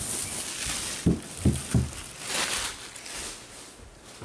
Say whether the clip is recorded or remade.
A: recorded